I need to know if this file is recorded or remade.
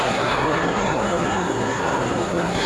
remade